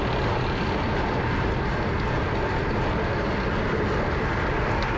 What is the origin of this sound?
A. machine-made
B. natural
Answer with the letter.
B